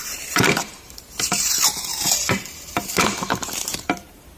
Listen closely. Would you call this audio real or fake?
fake